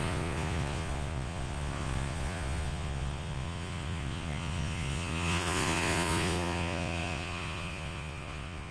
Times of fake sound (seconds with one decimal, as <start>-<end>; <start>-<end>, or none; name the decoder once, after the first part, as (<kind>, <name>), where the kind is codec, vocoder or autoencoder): 0.0-8.7 (vocoder, Vocos)